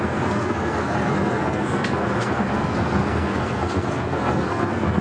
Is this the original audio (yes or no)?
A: no